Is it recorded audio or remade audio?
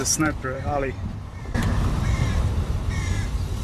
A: remade